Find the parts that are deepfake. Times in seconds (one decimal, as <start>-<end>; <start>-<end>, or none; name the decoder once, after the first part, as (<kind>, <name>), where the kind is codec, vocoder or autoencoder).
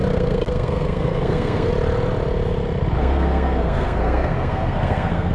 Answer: 0.0-1.7 (codec, SNAC); 3.0-5.3